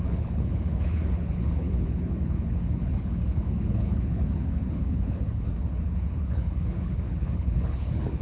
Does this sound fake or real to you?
fake